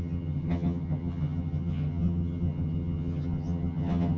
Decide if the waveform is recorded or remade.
remade